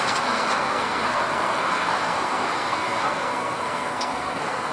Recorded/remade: remade